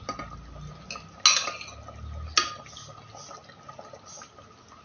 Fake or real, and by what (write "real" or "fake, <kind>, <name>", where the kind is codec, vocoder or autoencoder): real